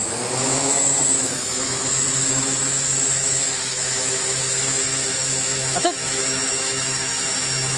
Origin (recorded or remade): remade